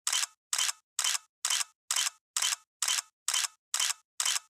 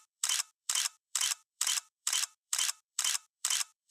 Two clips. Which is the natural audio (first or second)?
first